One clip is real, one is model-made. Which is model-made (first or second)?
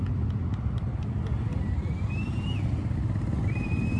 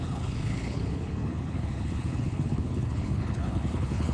second